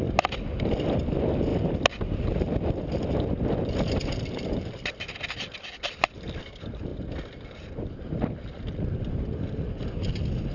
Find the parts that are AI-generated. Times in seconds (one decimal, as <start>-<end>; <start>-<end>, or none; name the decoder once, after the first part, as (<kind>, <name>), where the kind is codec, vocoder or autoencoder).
1.5-6.4 (vocoder, BigVGAN v2); 6.9-9.7